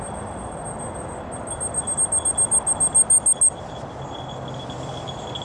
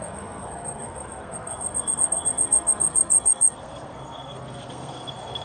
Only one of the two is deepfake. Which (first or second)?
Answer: second